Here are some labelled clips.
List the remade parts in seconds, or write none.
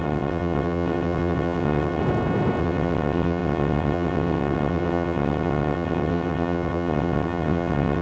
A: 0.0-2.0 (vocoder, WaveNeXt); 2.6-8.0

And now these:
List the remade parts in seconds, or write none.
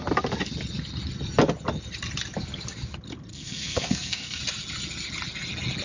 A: 3.3-4.4 (codec, SNAC)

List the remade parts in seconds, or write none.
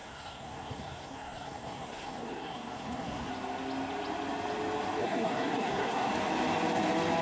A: 0.0-3.3 (codec, SNAC); 5.0-6.1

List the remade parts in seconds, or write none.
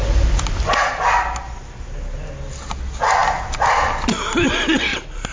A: none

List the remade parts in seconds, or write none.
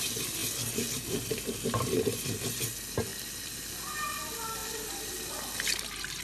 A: 0.4-2.4 (vocoder, BigVGAN v2); 3.1-3.6; 4.6-5.3